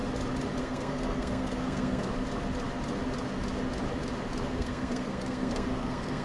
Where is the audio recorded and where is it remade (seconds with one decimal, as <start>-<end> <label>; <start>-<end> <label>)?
0.0-0.6 recorded; 0.6-2.1 remade; 2.1-4.4 recorded; 4.4-6.2 remade